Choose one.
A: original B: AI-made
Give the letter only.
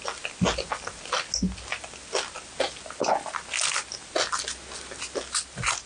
A